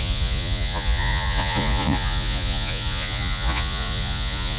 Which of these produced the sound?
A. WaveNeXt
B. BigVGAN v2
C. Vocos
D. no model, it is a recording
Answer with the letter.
C